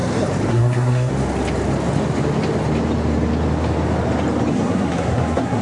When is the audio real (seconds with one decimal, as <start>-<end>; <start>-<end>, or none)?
0.0-0.5; 1.1-4.5